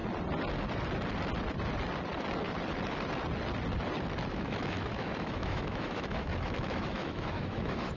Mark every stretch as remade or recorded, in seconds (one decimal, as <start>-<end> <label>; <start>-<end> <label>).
0.0-4.3 recorded; 4.3-8.0 remade